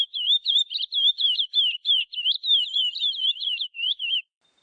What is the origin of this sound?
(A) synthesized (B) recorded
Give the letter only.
A